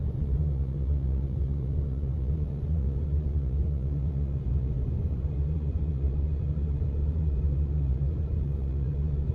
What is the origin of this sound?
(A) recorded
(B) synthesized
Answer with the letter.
B